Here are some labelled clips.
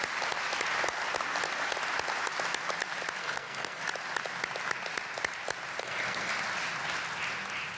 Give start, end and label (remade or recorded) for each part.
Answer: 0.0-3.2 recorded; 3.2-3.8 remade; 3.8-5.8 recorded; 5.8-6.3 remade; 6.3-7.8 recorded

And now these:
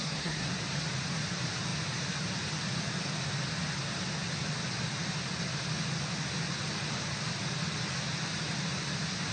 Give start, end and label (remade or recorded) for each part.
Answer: 0.0-0.5 remade; 0.5-9.3 recorded

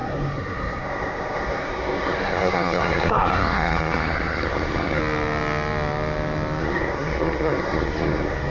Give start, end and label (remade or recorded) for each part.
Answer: 0.0-5.0 remade; 5.0-6.6 recorded; 6.6-8.5 remade

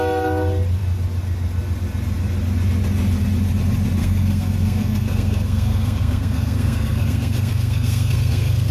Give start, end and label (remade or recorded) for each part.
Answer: 0.0-4.0 recorded; 4.0-8.7 remade